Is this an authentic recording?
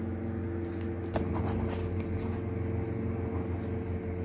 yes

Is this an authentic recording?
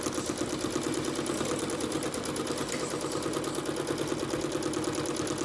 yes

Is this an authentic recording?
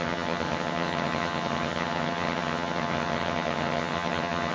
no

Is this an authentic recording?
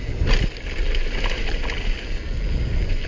yes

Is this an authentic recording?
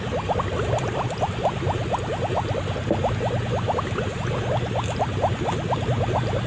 yes